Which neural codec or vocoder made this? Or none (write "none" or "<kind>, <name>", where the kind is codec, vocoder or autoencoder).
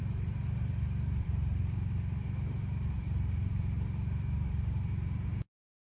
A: vocoder, BigVGAN v2